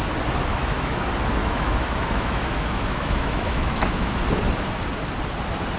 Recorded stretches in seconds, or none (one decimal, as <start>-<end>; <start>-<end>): 0.0-0.5; 1.0-1.4; 4.2-5.8